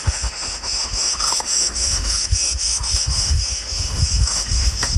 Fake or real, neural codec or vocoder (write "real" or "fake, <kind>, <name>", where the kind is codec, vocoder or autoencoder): fake, autoencoder, DAC-VAE